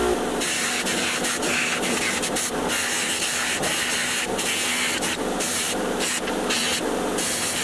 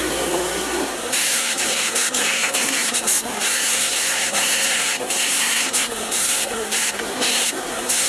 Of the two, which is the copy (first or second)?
second